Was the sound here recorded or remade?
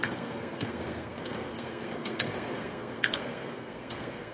remade